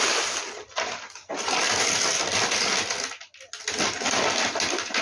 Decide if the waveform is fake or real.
real